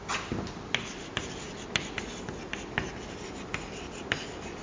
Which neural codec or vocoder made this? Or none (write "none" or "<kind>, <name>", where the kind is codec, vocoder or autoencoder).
none